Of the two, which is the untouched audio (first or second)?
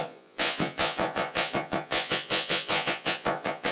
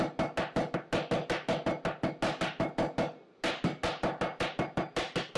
second